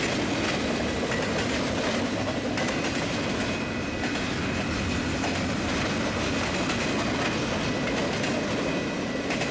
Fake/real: real